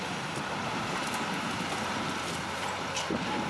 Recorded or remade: remade